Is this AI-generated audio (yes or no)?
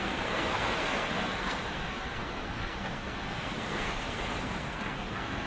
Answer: yes